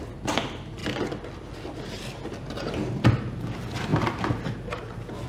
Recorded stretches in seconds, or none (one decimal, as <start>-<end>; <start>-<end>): 0.0-5.3